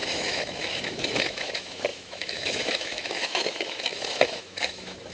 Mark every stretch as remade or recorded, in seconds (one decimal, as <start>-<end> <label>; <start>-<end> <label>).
0.0-5.1 remade